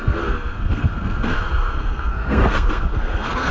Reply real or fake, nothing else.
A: fake